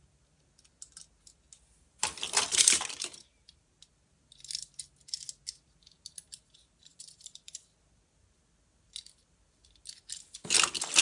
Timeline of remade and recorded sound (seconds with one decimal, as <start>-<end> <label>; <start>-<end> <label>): 0.0-2.5 recorded; 2.5-3.7 remade; 3.7-6.9 recorded; 6.9-7.6 remade; 7.6-11.0 recorded